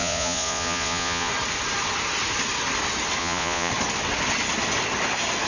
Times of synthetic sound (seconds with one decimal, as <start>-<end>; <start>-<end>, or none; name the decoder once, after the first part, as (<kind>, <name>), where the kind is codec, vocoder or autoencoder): 0.0-1.3 (vocoder, Vocos); 3.2-3.7